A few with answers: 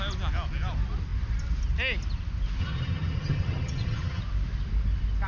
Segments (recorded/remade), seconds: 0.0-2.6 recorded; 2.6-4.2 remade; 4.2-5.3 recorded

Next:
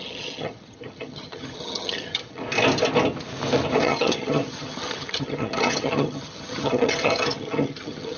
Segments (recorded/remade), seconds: 0.0-2.4 remade; 2.4-3.8 recorded; 3.8-8.2 remade

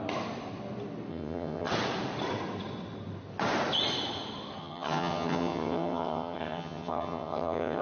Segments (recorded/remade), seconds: 0.0-1.1 recorded; 1.1-1.7 remade; 1.7-4.6 recorded; 4.6-7.8 remade